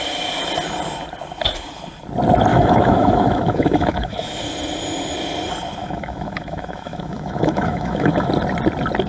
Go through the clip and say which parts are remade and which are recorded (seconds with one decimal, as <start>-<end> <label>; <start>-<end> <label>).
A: 0.0-2.5 recorded; 2.5-4.4 remade; 4.4-5.8 recorded; 5.8-8.3 remade; 8.3-9.1 recorded